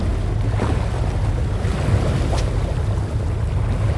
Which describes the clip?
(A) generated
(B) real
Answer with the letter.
B